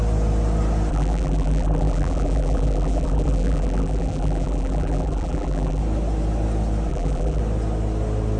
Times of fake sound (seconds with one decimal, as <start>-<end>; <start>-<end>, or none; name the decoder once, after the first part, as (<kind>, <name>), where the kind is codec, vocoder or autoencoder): 0.9-5.8 (vocoder, BigVGAN v2); 6.9-7.4